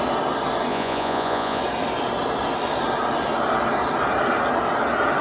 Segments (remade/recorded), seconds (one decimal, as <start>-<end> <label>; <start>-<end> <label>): 0.0-0.7 recorded; 0.7-1.6 remade; 1.6-5.2 recorded